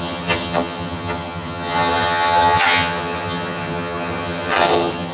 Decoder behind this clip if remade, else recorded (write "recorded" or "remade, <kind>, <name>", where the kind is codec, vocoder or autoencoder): remade, vocoder, HiFi-GAN